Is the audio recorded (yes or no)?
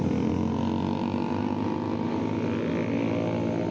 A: yes